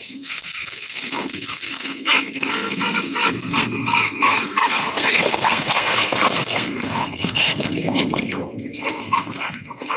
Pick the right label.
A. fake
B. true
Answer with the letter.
A